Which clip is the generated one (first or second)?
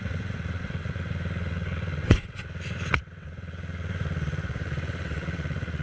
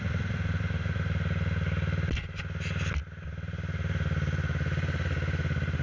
first